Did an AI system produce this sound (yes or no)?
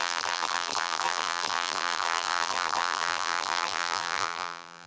yes